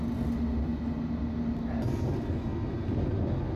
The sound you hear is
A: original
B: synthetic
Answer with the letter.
A